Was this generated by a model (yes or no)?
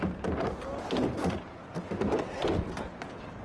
no